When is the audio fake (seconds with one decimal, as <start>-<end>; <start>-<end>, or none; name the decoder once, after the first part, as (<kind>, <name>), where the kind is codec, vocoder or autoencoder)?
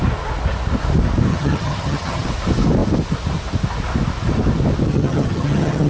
1.3-2.3 (vocoder, HiFi-GAN); 4.9-5.9